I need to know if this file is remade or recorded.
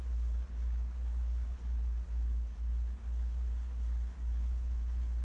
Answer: remade